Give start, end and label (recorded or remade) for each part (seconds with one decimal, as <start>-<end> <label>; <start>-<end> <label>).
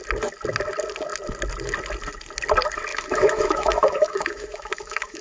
0.0-2.9 recorded; 2.9-5.2 remade